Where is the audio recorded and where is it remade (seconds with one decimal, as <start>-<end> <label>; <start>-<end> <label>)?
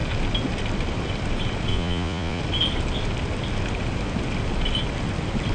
0.0-1.7 recorded; 1.7-2.4 remade; 2.4-5.5 recorded